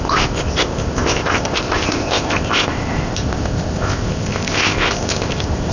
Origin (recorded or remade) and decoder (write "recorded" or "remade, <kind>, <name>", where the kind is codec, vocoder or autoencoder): remade, codec, ZipCodec